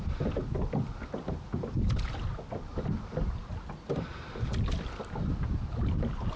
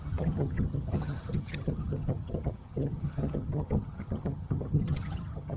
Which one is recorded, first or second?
first